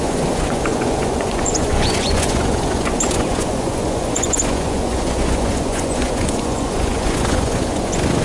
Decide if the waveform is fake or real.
fake